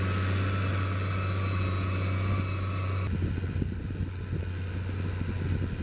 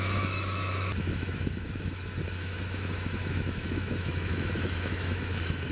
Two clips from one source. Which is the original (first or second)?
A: first